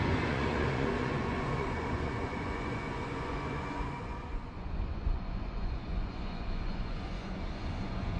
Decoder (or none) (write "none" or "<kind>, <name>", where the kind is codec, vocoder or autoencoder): vocoder, Vocos